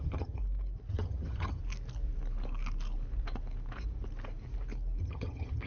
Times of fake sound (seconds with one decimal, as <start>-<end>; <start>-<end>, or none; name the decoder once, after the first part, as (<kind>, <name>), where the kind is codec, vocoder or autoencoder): 0.0-0.4 (vocoder, HiFi-GAN); 0.9-1.6; 5.0-5.7